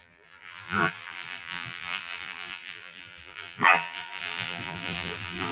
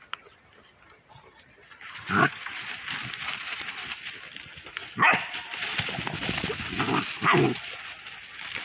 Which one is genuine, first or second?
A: second